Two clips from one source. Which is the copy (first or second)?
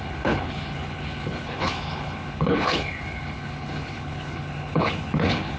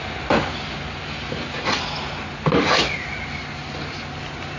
first